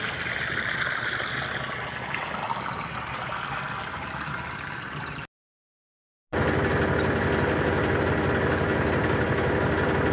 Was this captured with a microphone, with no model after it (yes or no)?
yes